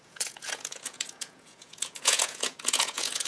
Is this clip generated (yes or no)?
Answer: yes